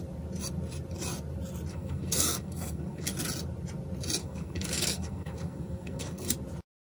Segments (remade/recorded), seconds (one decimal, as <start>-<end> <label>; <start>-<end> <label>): 0.0-1.7 recorded; 1.7-3.1 remade; 3.1-4.2 recorded; 4.2-6.3 remade; 6.3-7.0 recorded